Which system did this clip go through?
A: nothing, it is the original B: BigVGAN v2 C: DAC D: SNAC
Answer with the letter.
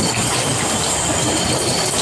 A